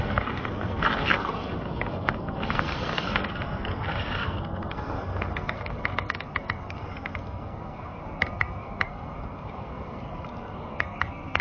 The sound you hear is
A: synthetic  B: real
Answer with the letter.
A